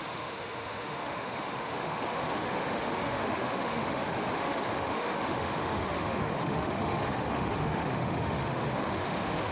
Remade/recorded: remade